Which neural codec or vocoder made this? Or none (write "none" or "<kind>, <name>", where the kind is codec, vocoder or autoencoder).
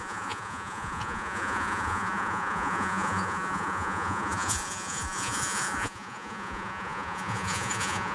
vocoder, Vocos